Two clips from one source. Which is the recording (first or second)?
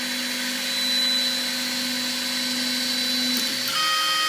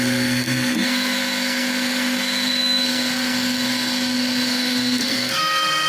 first